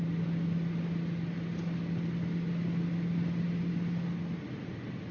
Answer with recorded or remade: recorded